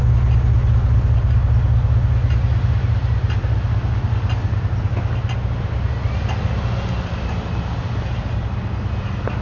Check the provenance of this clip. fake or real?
real